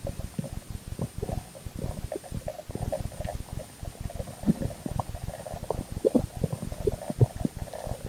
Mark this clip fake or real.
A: real